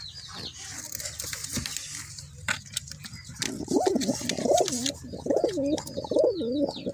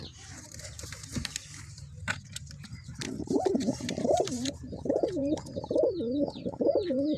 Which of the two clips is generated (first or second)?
second